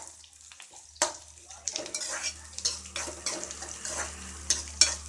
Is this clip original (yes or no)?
yes